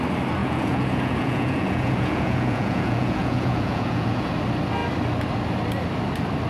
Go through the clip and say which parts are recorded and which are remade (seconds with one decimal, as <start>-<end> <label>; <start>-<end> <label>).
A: 0.0-0.4 recorded; 0.4-4.3 remade; 4.3-6.5 recorded